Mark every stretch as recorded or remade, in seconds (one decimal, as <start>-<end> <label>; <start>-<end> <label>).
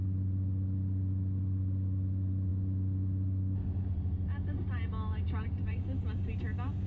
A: 0.0-6.9 recorded